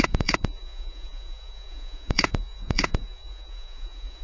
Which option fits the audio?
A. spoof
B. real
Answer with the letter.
A